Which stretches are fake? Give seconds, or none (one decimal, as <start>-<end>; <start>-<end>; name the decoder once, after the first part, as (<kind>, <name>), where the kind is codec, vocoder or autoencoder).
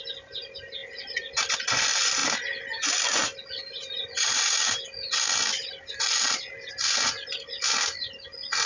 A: none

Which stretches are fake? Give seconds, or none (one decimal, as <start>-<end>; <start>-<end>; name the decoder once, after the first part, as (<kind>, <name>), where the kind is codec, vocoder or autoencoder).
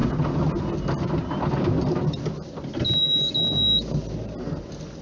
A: none